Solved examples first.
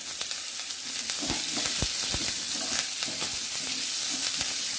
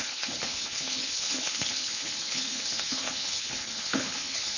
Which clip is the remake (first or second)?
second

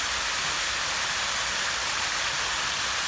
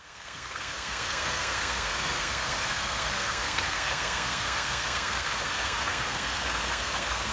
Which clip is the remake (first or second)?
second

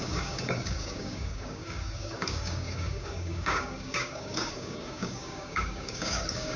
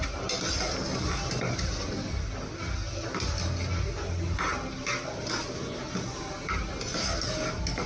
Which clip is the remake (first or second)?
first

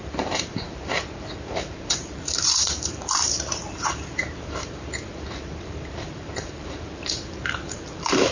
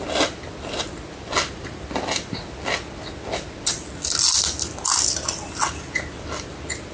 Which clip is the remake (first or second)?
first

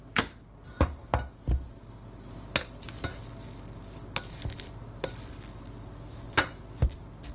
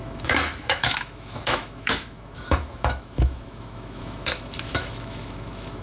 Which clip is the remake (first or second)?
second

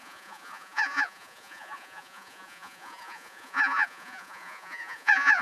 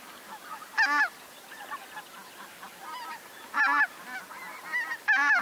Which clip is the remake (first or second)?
first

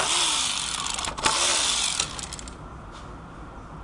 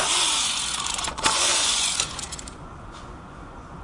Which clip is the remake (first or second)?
second